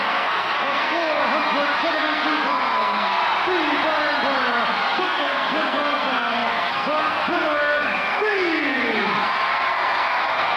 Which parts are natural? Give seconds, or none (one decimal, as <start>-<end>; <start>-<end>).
1.2-1.9; 3.2-4.7